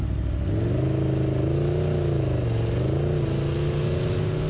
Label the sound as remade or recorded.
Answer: recorded